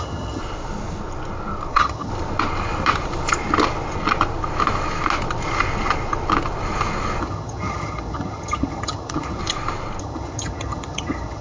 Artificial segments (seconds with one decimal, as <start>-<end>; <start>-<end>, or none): 0.0-0.4; 1.7-2.1; 7.2-9.4; 10.0-11.4